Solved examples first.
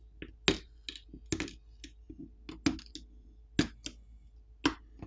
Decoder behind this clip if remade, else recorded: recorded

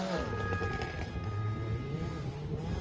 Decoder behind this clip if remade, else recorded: recorded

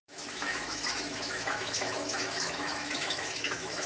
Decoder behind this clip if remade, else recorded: remade, autoencoder, DAC-VAE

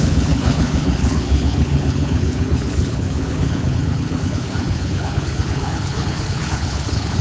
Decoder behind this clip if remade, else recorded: remade, codec, HILCodec